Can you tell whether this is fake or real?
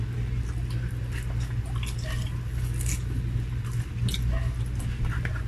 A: real